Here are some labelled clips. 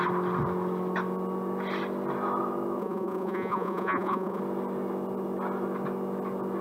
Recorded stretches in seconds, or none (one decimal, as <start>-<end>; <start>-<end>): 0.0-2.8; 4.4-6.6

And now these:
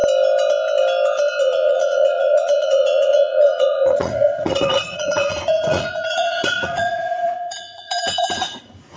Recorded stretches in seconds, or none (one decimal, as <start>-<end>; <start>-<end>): 0.0-1.4

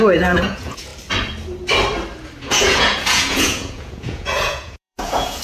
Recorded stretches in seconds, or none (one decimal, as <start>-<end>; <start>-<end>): 0.9-2.4